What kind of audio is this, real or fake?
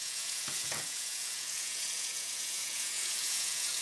fake